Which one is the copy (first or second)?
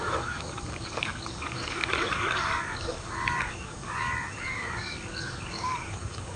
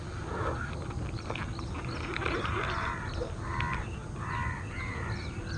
first